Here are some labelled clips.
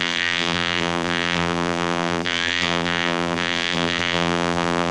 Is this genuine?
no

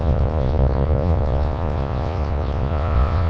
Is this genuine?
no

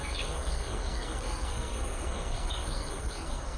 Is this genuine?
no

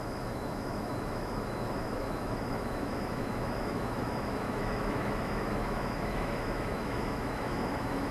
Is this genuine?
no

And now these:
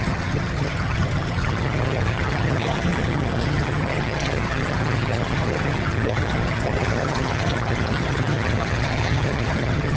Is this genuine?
no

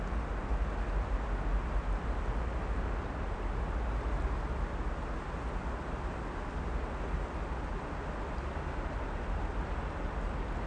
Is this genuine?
yes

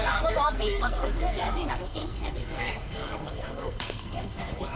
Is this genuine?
no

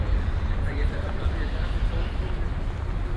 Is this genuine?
yes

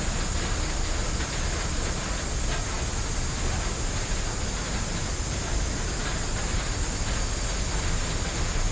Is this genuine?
yes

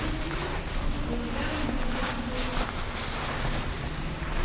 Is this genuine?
yes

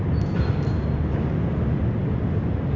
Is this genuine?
yes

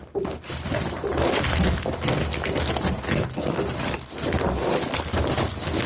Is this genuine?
yes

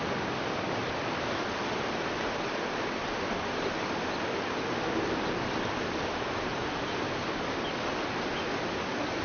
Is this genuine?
yes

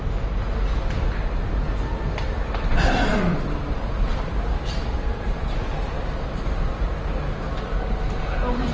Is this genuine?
yes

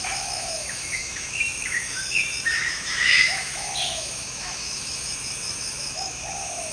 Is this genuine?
no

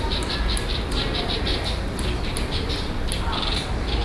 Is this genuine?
yes